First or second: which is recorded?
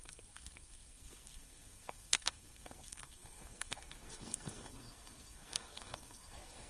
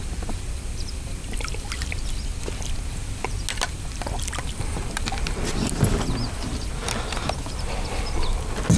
second